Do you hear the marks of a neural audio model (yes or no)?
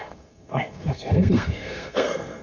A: yes